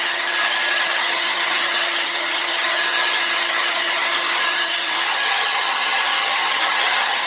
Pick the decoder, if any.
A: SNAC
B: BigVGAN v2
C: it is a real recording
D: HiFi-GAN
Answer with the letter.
D